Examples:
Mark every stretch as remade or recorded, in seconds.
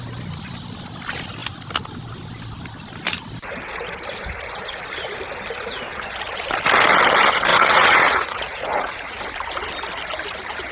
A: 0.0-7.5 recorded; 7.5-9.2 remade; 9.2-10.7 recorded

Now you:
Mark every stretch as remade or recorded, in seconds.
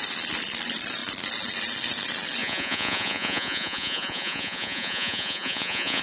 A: 0.0-2.4 recorded; 2.4-6.0 remade